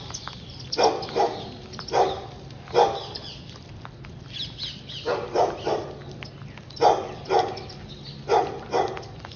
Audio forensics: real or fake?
real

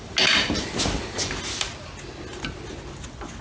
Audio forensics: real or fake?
real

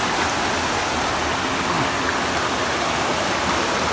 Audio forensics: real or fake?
real